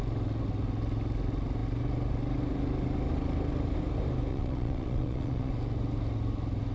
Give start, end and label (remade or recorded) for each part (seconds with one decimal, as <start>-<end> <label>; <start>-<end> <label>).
0.0-4.3 recorded; 4.3-5.5 remade; 5.5-6.7 recorded